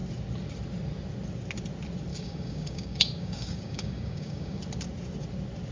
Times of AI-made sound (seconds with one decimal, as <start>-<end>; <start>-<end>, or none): 2.1-4.6

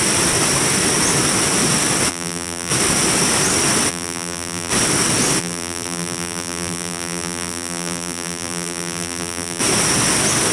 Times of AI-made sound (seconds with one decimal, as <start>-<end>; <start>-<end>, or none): 2.1-2.7; 3.9-4.7; 5.4-9.6

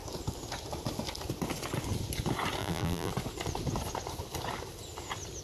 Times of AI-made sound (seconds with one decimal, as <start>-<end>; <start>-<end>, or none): 2.6-3.1

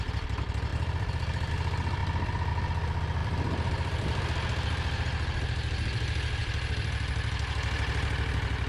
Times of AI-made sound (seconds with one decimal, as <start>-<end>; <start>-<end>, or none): 0.7-1.5; 2.0-2.5; 3.2-4.0

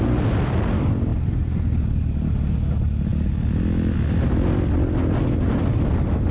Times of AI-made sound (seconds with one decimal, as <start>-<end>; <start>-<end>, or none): none

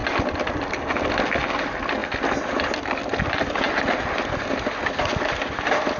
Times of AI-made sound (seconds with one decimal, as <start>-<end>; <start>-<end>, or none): none

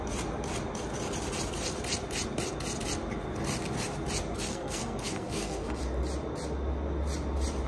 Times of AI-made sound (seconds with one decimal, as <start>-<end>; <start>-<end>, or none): 4.5-5.8

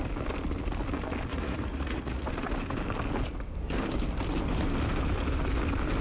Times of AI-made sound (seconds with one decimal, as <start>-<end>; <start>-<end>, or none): 1.3-2.3